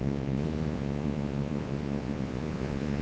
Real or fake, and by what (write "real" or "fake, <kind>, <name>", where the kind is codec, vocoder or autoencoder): fake, vocoder, Vocos